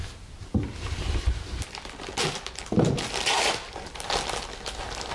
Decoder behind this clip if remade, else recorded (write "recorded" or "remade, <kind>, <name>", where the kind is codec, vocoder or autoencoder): recorded